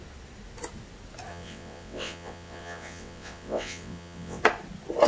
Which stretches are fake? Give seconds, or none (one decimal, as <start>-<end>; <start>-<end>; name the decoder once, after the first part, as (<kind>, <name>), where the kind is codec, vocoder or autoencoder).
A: 1.3-4.4 (vocoder, WaveNeXt)